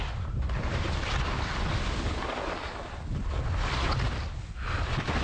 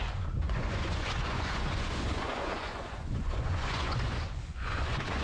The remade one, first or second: second